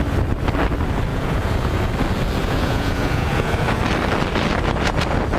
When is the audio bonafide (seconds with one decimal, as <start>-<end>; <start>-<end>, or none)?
0.0-1.1; 1.9-2.4; 3.8-5.4